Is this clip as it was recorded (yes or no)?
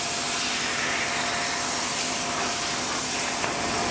yes